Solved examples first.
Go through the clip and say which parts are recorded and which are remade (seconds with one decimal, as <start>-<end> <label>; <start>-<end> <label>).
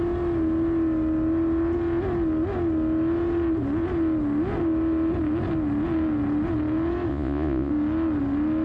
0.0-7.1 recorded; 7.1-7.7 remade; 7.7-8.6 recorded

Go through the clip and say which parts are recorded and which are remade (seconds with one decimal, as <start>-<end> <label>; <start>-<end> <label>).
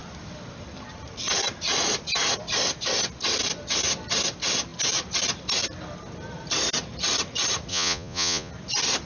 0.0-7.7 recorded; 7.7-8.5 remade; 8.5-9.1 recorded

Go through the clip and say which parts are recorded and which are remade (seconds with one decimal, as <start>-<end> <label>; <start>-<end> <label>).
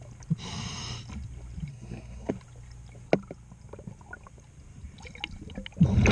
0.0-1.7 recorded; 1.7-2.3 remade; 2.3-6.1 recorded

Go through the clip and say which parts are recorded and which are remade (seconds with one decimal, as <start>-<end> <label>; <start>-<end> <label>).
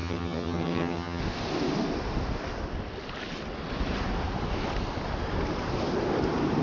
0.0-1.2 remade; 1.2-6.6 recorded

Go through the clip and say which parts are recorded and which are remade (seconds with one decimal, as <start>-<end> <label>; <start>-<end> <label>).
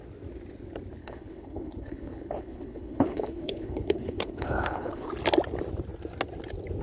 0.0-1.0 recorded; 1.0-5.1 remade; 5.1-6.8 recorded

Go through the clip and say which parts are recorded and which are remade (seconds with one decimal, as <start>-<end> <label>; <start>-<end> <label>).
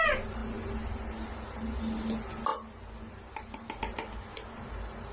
0.0-5.1 recorded